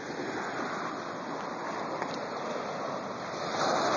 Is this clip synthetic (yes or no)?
no